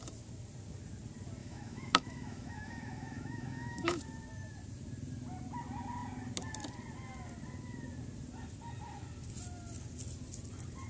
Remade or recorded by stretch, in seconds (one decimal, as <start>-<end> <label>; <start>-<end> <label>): 0.0-1.4 recorded; 1.4-4.0 remade; 4.0-10.9 recorded